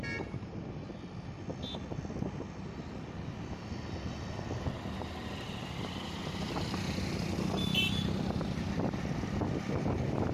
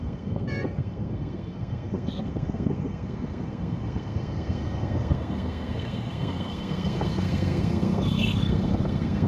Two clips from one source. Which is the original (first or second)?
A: first